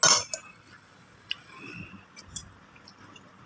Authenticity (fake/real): real